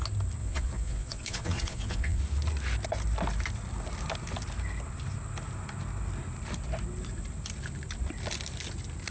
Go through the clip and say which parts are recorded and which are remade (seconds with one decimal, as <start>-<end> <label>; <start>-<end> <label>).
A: 0.0-0.4 recorded; 0.4-2.2 remade; 2.2-9.1 recorded